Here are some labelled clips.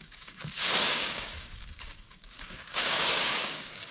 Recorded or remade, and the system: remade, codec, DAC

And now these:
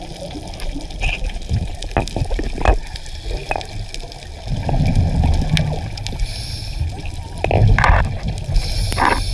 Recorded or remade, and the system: recorded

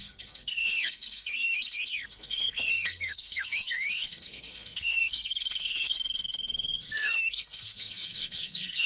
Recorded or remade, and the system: remade, codec, SNAC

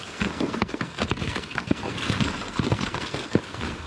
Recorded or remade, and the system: remade, codec, SNAC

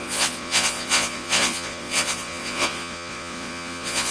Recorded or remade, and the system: remade, vocoder, Vocos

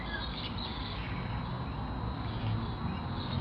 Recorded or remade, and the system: recorded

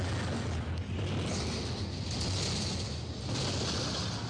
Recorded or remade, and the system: recorded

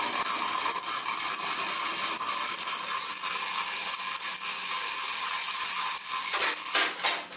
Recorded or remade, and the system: recorded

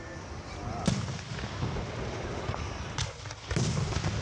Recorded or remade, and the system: recorded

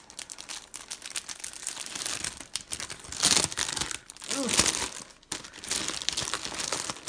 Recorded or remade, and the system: recorded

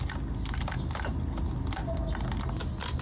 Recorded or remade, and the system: recorded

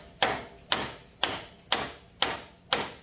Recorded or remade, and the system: recorded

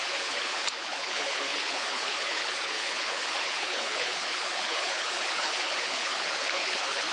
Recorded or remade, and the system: remade, codec, HILCodec